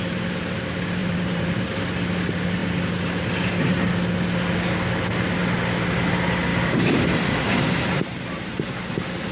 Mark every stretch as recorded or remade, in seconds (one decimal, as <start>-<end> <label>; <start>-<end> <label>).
0.0-1.0 recorded; 1.0-1.7 remade; 1.7-6.5 recorded; 6.5-8.7 remade; 8.7-9.3 recorded